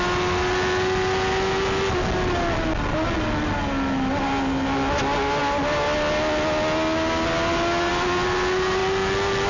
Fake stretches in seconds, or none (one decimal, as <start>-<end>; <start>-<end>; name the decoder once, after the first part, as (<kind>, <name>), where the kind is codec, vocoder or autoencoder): none

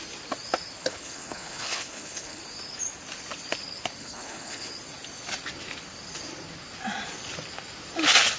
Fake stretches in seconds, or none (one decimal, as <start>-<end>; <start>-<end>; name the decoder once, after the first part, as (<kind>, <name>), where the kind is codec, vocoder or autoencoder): 0.8-2.4 (codec, HILCodec); 4.0-4.7

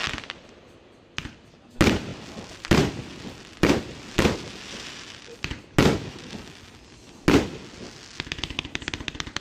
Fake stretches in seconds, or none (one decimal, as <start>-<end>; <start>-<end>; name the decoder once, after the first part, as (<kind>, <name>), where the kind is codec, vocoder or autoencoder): 0.0-0.7 (vocoder, BigVGAN v2)

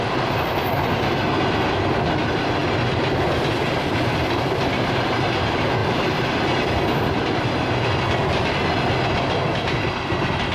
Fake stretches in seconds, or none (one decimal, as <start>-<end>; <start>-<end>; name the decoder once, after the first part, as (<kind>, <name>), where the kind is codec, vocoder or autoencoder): none

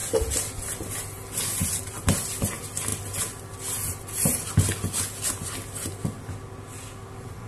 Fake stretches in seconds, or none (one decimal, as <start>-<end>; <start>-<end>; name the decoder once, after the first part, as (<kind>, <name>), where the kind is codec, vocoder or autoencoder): none

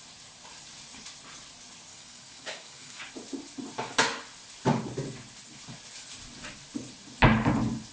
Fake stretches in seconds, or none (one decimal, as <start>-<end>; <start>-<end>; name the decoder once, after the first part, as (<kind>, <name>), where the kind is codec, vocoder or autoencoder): 1.9-3.0 (codec, DAC)